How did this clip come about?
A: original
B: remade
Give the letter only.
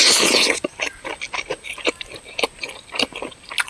A